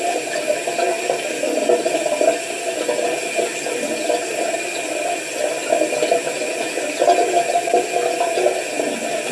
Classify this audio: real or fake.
real